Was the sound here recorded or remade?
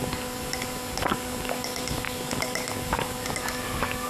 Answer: remade